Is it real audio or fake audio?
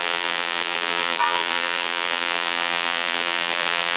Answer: fake